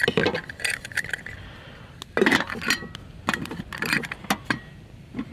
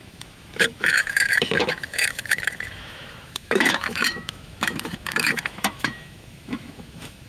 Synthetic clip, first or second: second